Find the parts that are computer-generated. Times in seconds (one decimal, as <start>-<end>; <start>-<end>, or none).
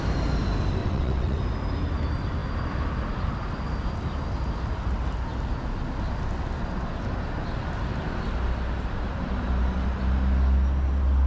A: 0.8-1.4